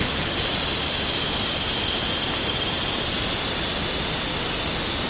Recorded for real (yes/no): yes